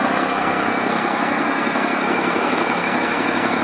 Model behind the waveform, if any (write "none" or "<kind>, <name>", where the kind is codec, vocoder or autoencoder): codec, SNAC